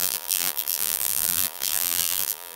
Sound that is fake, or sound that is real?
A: fake